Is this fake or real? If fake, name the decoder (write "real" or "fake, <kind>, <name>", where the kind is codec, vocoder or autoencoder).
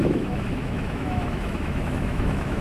fake, autoencoder, DAC-VAE